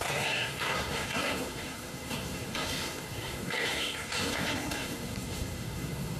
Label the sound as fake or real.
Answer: fake